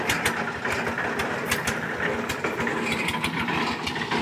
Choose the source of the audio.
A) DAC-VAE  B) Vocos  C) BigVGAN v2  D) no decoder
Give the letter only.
D